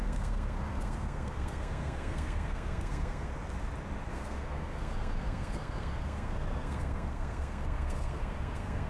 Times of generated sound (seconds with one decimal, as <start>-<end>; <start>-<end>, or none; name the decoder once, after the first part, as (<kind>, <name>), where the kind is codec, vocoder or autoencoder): 0.0-3.3 (codec, SNAC); 4.1-8.9